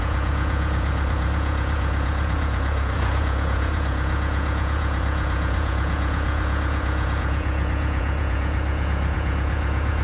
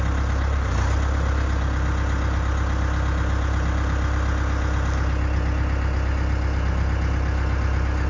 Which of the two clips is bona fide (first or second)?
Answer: second